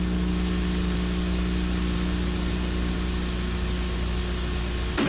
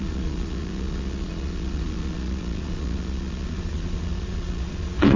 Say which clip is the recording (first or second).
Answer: first